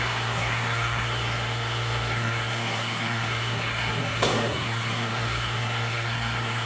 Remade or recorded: remade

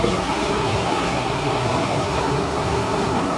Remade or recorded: remade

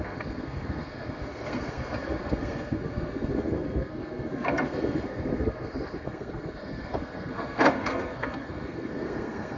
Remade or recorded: remade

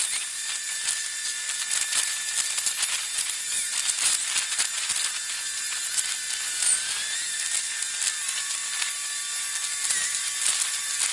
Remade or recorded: recorded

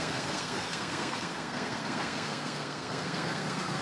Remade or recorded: remade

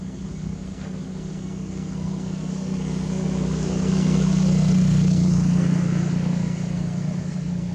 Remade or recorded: remade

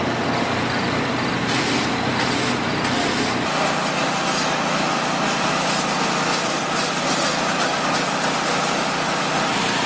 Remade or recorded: recorded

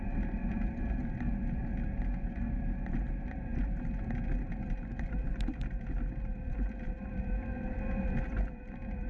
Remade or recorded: recorded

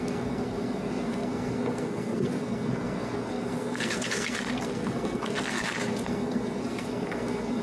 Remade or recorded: remade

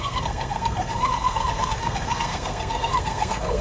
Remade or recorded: remade